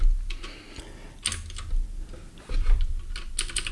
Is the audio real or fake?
real